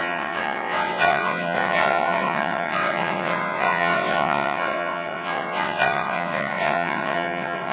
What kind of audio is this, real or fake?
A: fake